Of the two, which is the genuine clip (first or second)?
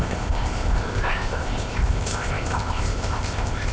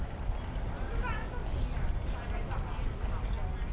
second